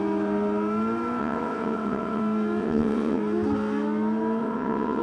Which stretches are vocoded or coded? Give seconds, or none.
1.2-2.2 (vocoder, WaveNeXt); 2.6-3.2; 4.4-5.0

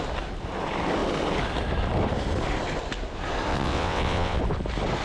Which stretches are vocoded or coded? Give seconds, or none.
3.5-4.4 (vocoder, WaveNeXt)

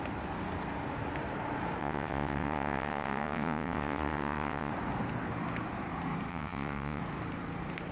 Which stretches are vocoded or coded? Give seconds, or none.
1.8-4.7 (vocoder, WaveNeXt); 6.3-7.0

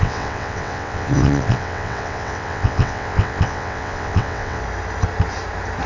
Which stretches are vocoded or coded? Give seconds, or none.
0.0-4.6 (vocoder, WaveNeXt)

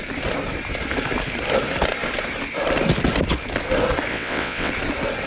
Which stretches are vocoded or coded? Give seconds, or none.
4.1-4.7 (vocoder, WaveNeXt)

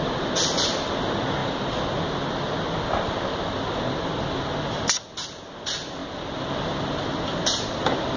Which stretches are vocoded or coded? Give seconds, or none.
none